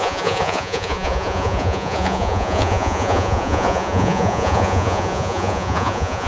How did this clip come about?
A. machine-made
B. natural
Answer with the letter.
A